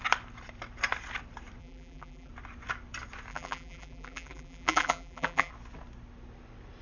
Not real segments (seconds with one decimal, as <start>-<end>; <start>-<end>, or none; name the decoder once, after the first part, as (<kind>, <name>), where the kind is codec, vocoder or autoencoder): 1.6-2.3 (vocoder, BigVGAN v2); 3.3-5.5